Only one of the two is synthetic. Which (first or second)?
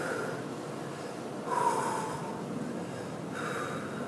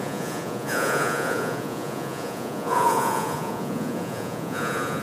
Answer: second